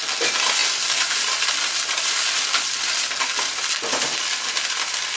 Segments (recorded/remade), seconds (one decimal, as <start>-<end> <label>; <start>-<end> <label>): 0.0-5.2 recorded